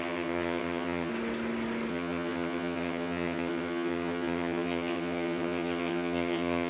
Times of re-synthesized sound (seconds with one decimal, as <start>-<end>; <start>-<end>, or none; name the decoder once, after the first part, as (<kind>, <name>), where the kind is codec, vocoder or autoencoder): 0.0-1.1 (vocoder, HiFi-GAN); 1.9-6.7